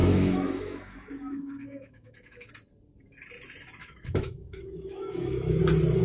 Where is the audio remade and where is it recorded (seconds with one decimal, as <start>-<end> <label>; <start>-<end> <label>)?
0.0-2.5 remade; 2.5-3.8 recorded; 3.8-5.6 remade; 5.6-6.0 recorded

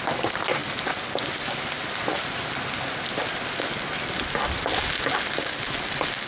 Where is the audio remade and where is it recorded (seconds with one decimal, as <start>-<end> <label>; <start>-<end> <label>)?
0.0-6.3 recorded

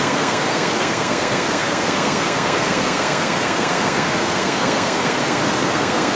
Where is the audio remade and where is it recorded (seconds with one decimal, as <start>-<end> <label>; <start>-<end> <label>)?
0.0-6.2 remade

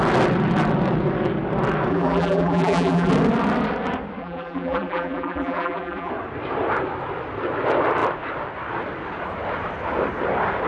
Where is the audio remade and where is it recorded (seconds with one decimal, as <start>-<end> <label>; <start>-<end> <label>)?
0.0-1.9 recorded; 1.9-3.1 remade; 3.1-4.2 recorded; 4.2-6.1 remade; 6.1-10.7 recorded